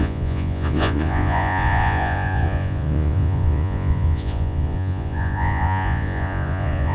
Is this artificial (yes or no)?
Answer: yes